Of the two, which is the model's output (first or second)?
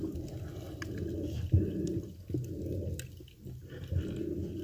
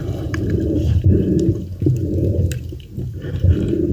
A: second